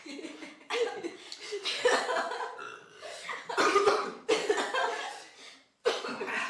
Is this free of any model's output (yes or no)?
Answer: yes